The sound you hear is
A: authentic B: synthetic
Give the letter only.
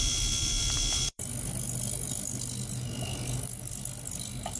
B